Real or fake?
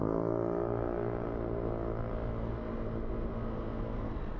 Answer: real